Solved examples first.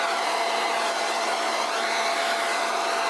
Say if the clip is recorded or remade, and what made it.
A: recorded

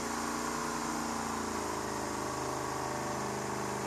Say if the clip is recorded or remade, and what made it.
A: recorded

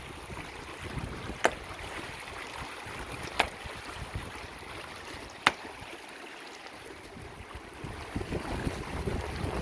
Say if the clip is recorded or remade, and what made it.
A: recorded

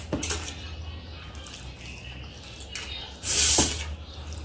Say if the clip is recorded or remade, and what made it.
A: recorded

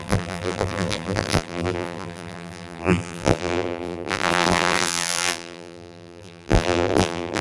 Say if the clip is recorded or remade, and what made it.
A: remade, vocoder, BigVGAN v2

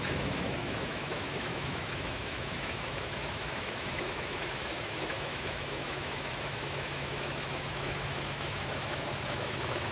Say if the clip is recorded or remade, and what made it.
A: remade, autoencoder, DAC-VAE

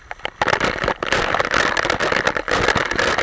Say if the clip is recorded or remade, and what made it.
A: recorded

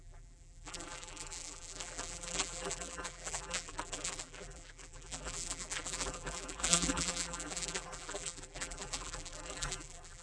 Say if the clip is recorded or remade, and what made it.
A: remade, vocoder, BigVGAN v2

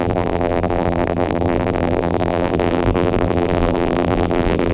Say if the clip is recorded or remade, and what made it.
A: remade, vocoder, BigVGAN v2